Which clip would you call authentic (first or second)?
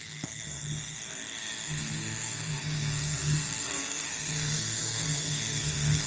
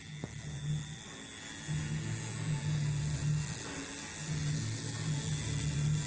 second